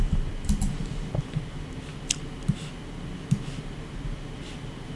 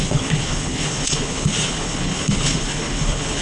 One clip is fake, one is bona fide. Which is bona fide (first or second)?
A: first